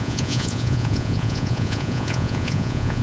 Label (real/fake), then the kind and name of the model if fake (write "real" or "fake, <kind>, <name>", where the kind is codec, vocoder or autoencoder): fake, vocoder, Vocos